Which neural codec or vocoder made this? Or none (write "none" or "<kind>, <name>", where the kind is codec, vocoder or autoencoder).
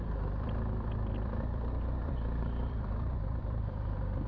vocoder, BigVGAN v2